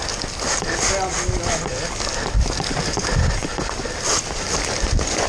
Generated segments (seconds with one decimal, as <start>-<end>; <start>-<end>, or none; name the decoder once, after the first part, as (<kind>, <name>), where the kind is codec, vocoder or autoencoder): none